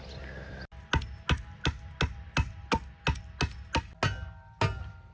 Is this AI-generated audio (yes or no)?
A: no